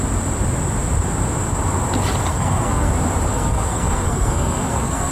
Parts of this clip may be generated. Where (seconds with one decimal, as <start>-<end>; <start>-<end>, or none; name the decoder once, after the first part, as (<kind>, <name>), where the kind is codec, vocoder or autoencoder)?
2.3-2.9 (codec, SNAC); 3.3-5.1